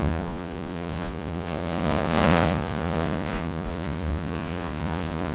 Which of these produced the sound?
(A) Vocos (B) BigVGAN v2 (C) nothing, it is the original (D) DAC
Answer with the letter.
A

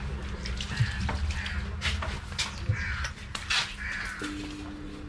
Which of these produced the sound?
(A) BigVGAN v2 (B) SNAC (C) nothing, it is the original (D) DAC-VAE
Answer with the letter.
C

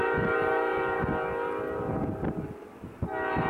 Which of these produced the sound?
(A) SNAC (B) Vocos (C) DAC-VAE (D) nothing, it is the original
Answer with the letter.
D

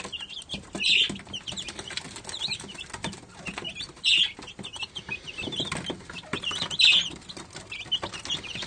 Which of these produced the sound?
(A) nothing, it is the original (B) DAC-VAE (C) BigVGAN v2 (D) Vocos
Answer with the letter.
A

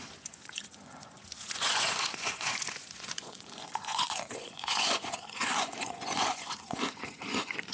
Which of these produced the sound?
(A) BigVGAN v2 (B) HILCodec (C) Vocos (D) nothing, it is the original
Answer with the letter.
C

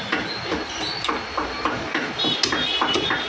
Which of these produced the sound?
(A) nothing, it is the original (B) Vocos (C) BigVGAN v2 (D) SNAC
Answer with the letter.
A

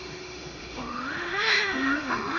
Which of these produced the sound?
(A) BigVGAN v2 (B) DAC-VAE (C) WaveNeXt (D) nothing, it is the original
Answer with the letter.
B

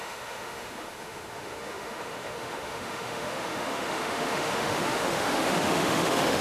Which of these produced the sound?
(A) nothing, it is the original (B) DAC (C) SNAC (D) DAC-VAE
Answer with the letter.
D